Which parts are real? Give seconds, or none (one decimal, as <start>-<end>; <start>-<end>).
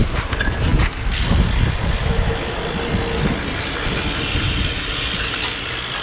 0.0-2.0; 2.6-6.0